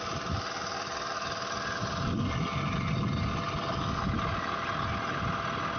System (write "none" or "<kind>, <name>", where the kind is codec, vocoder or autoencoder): none